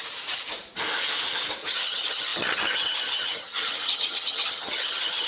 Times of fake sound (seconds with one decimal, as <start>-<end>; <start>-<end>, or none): 1.6-5.3